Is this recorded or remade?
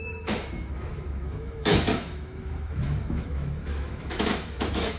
remade